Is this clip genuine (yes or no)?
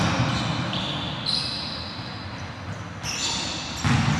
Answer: yes